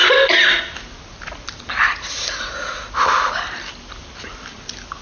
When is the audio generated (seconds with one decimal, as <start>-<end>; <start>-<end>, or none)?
1.8-2.8